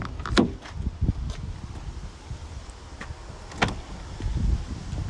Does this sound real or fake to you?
real